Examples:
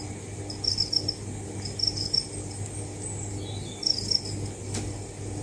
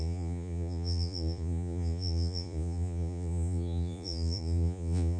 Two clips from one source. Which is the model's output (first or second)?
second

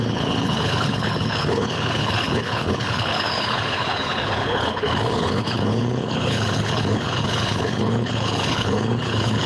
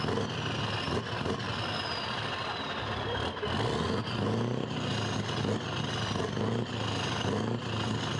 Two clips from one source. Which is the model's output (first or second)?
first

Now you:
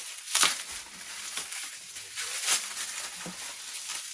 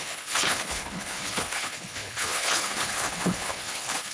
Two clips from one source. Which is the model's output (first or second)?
second